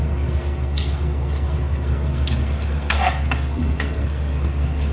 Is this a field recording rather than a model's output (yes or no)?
no